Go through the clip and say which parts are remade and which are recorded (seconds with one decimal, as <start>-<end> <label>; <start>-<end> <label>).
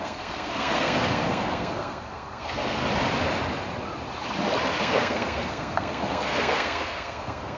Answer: 0.0-2.8 remade; 2.8-4.8 recorded; 4.8-7.6 remade